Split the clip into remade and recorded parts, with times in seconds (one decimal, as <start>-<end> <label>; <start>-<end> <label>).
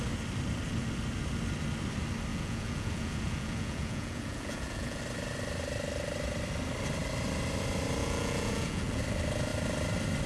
0.0-2.3 recorded; 2.3-5.0 remade; 5.0-8.0 recorded; 8.0-9.0 remade; 9.0-10.3 recorded